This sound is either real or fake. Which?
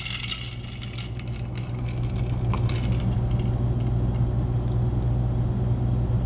real